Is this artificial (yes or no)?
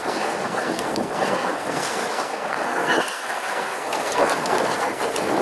yes